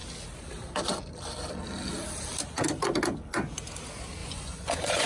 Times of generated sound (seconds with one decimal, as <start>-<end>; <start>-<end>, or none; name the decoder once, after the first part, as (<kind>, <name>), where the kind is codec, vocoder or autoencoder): 4.2-5.1 (vocoder, Vocos)